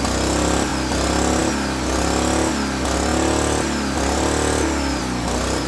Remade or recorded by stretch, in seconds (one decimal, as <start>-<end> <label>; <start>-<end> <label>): 0.0-5.7 recorded